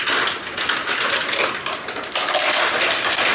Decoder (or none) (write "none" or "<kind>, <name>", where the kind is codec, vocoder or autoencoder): none